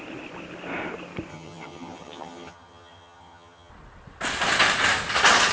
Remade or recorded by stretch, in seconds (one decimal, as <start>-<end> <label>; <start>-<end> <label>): 0.0-1.3 recorded; 1.3-3.7 remade; 3.7-5.5 recorded